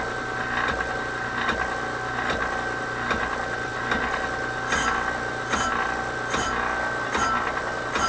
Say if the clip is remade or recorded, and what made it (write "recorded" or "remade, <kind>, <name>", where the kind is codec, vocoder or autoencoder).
recorded